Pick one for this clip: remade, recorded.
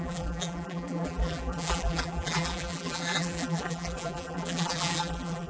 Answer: remade